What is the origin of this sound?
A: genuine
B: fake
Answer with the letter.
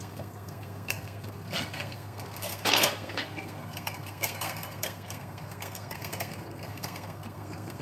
B